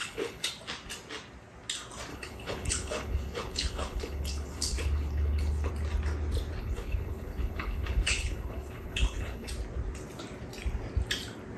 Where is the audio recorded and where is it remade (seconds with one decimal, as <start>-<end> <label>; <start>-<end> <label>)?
0.0-0.5 remade; 0.5-2.1 recorded; 2.1-5.7 remade; 5.7-6.6 recorded; 6.6-9.5 remade; 9.5-11.6 recorded